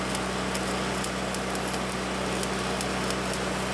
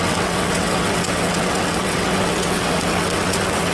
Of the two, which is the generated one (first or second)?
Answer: second